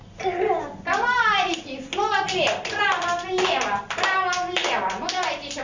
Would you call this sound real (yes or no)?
yes